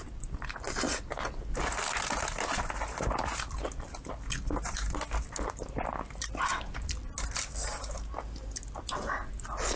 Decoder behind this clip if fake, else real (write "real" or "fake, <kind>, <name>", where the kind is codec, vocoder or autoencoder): real